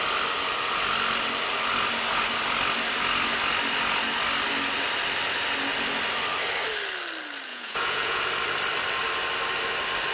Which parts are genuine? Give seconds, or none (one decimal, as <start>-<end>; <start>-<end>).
0.0-7.5; 8.2-10.1